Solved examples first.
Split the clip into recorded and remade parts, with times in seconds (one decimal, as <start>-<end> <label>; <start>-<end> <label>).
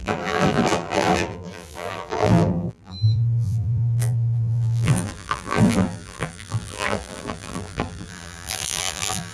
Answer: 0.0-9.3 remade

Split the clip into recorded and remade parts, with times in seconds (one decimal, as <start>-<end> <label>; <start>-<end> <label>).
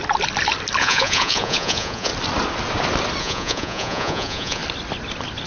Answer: 0.0-0.8 recorded; 0.8-2.1 remade; 2.1-3.2 recorded; 3.2-4.6 remade; 4.6-5.5 recorded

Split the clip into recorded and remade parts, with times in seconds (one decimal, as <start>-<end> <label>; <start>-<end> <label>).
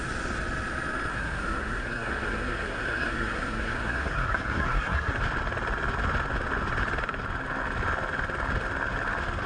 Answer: 0.0-1.1 recorded; 1.1-5.1 remade; 5.1-9.5 recorded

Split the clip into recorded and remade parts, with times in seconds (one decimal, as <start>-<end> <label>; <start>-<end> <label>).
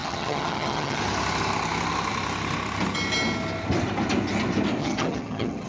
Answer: 0.0-1.0 remade; 1.0-4.8 recorded; 4.8-5.7 remade